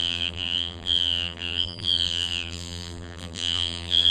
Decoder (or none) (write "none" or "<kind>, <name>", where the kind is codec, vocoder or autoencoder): vocoder, BigVGAN v2